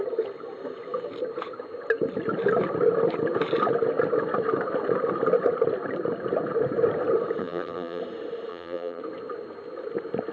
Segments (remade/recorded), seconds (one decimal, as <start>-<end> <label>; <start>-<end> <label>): 0.0-7.4 recorded; 7.4-8.0 remade; 8.0-8.5 recorded; 8.5-9.0 remade; 9.0-10.3 recorded